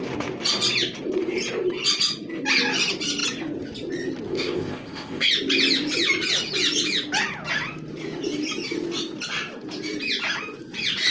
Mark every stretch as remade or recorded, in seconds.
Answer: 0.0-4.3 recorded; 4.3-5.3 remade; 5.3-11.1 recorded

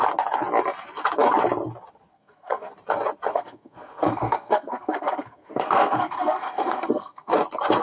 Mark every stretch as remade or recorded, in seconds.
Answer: 0.0-2.1 recorded; 2.1-2.7 remade; 2.7-3.3 recorded; 3.3-7.3 remade; 7.3-7.8 recorded

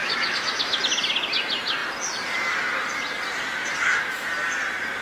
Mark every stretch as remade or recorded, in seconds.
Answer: 0.0-0.8 remade; 0.8-5.0 recorded

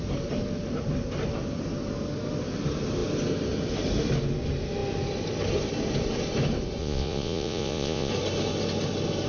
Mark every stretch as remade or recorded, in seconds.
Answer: 0.0-6.8 recorded; 6.8-8.1 remade; 8.1-9.3 recorded

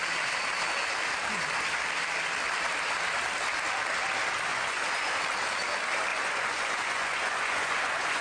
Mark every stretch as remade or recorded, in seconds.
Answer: 0.0-4.5 recorded; 4.5-5.1 remade; 5.1-6.1 recorded; 6.1-8.2 remade